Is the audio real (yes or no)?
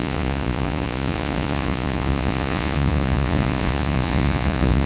no